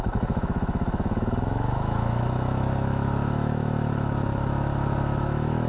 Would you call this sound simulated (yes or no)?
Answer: yes